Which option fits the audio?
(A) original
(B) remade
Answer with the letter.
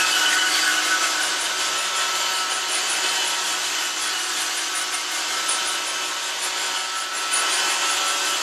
A